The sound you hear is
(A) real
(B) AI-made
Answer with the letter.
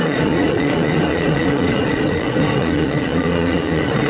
B